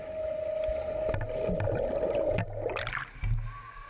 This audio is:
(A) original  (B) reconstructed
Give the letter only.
A